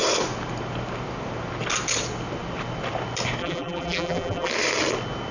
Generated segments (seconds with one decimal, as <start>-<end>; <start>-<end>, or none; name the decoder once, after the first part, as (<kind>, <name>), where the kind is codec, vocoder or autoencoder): 3.4-4.5 (vocoder, BigVGAN v2)